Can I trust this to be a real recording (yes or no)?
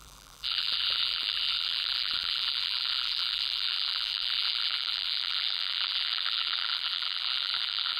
no